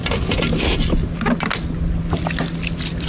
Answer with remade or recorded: recorded